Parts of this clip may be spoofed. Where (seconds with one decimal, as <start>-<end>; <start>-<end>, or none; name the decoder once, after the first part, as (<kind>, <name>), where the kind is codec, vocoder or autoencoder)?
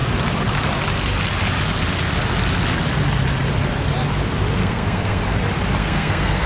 4.6-5.2 (codec, SNAC); 5.8-6.5